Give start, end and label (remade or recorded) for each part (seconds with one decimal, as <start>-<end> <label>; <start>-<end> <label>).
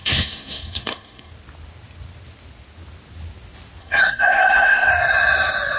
0.0-1.3 remade; 1.3-3.8 recorded; 3.8-4.9 remade; 4.9-5.8 recorded